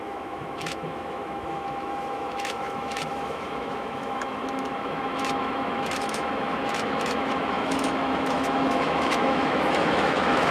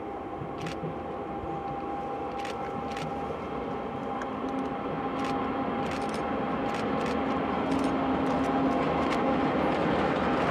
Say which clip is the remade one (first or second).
first